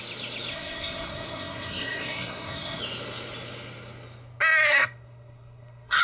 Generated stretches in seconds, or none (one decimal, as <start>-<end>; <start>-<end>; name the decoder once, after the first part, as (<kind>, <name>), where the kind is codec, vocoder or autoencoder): 0.5-2.8 (codec, SNAC); 4.7-6.0

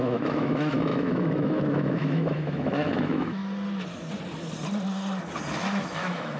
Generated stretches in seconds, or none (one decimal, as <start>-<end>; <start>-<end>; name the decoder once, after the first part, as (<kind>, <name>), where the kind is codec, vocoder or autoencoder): 0.0-3.4 (autoencoder, DAC-VAE); 5.5-6.4

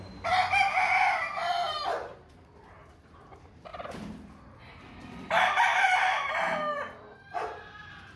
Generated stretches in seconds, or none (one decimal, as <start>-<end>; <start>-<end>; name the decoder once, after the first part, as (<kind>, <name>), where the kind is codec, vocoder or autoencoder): 1.4-2.3 (vocoder, BigVGAN v2); 3.7-6.1

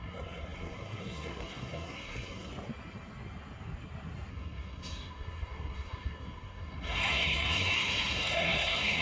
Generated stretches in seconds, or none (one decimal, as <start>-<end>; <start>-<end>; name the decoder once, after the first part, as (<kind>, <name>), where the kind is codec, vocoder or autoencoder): 0.0-2.5 (codec, SNAC); 4.3-9.0

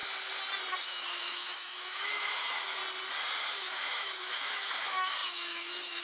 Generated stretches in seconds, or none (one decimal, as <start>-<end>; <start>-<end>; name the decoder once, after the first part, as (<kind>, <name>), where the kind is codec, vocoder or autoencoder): 0.8-2.8 (autoencoder, DAC-VAE); 3.4-6.0

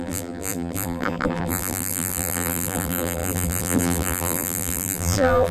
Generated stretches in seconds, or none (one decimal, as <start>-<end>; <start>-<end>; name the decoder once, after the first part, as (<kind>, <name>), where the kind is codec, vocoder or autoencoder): 0.0-5.5 (vocoder, BigVGAN v2)

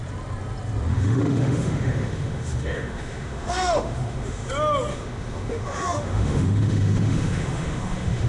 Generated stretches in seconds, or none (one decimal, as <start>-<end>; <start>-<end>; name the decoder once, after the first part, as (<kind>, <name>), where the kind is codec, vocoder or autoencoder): 0.9-4.5 (autoencoder, DAC-VAE); 4.9-8.3